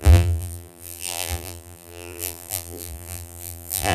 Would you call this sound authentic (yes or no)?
no